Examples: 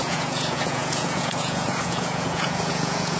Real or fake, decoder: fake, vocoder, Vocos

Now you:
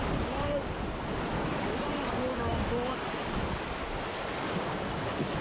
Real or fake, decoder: real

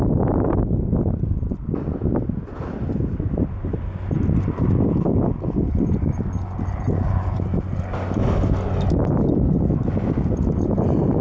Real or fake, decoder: real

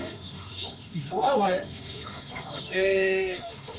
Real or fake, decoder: fake, autoencoder, DAC-VAE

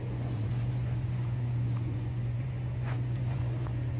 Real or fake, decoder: fake, vocoder, Vocos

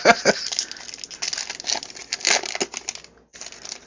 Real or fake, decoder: real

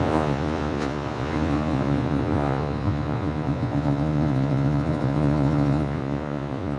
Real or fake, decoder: fake, vocoder, Vocos